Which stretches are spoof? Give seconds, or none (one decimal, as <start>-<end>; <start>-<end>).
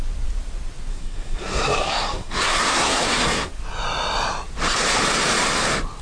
0.9-3.5